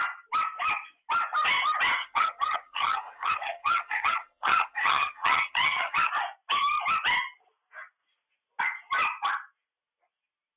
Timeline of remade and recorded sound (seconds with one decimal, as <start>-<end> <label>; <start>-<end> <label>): 0.0-2.0 recorded; 2.0-6.1 remade; 6.1-10.6 recorded